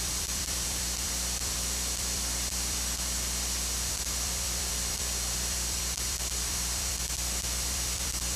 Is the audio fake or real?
fake